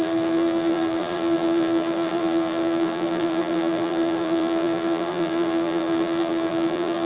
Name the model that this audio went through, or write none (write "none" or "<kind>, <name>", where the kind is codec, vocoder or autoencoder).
vocoder, BigVGAN v2